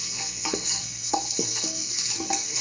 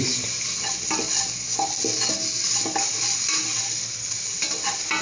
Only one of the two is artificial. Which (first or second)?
first